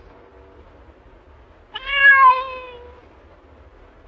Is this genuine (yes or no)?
yes